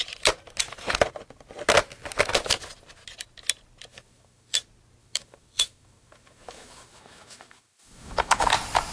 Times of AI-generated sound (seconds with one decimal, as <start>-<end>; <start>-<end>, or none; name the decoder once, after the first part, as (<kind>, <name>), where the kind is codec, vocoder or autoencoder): 3.9-4.6 (autoencoder, DAC-VAE); 5.0-8.5